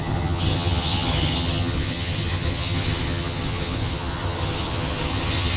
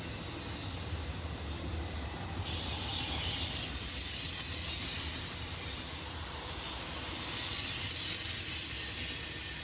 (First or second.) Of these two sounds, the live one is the second